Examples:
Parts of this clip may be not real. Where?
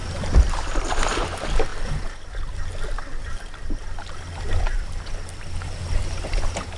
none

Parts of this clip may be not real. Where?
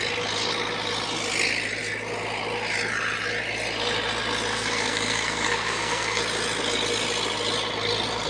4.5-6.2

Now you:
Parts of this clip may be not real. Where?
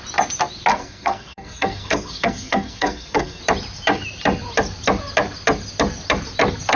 0.7-3.4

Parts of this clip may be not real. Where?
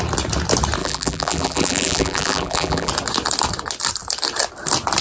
0.8-2.9